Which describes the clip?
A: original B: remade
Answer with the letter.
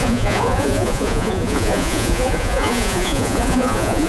B